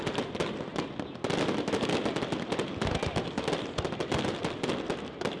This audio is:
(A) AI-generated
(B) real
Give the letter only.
B